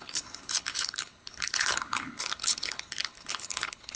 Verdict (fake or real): fake